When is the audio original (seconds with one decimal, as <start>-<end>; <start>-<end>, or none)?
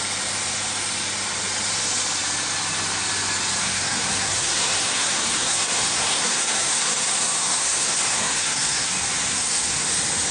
0.0-3.6; 8.9-9.3; 9.9-10.3